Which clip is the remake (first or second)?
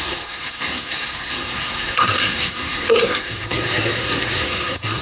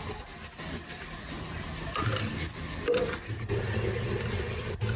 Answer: first